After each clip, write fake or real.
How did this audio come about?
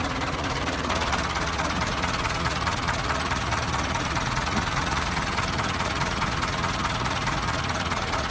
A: fake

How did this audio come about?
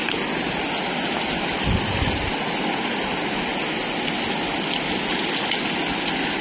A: real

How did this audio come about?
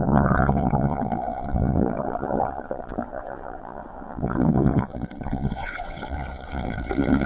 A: fake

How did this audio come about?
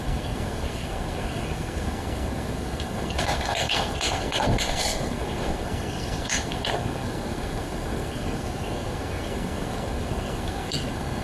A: fake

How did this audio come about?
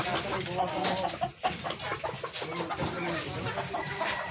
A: real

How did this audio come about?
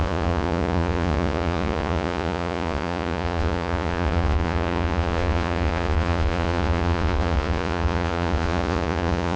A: fake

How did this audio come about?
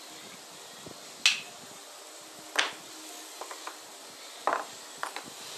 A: real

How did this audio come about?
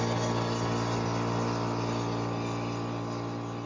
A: real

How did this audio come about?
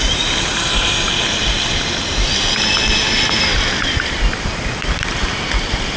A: real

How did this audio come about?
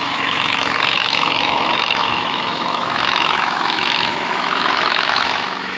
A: fake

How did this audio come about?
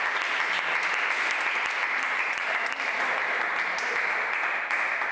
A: real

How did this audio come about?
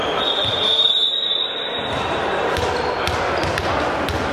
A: fake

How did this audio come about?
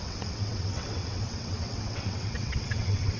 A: fake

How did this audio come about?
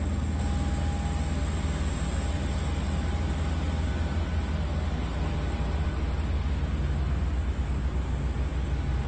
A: real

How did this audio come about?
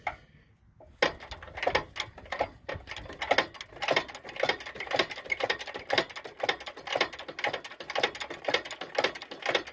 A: real